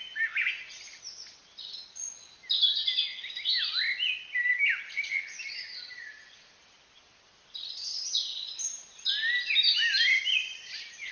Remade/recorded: recorded